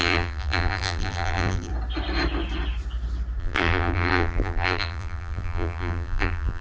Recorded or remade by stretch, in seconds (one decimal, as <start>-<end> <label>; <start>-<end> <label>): 0.0-1.7 remade; 1.7-3.4 recorded; 3.4-6.6 remade